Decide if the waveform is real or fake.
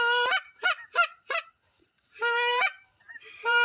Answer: fake